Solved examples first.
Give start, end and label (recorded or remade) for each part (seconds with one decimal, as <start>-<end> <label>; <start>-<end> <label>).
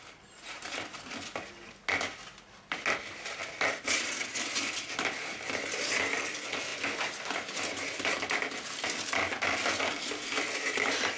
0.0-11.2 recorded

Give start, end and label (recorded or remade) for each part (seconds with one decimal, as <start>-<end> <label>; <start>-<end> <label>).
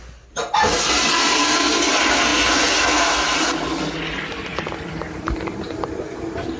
0.0-1.0 recorded; 1.0-1.9 remade; 1.9-4.5 recorded; 4.5-5.9 remade; 5.9-6.6 recorded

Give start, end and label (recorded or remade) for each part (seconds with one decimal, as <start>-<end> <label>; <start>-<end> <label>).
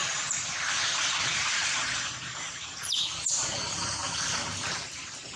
0.0-3.0 remade; 3.0-5.4 recorded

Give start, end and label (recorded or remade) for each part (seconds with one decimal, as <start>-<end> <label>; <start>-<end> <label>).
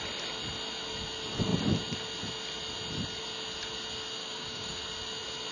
0.0-4.2 recorded; 4.2-4.8 remade; 4.8-5.5 recorded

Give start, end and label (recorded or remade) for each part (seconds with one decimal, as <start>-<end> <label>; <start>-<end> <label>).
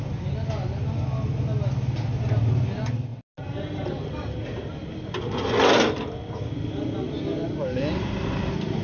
0.0-8.8 recorded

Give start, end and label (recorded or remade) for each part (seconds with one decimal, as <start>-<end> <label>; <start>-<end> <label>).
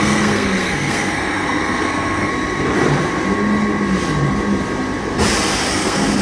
0.0-2.3 remade; 2.3-5.7 recorded; 5.7-6.2 remade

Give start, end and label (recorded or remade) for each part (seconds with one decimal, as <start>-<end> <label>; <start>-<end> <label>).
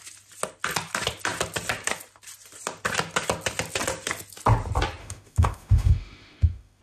0.0-5.0 recorded; 5.0-6.8 remade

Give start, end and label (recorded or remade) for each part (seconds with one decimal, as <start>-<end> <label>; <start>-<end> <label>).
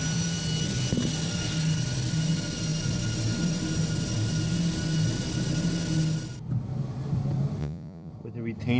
0.0-7.6 recorded; 7.6-8.1 remade; 8.1-8.8 recorded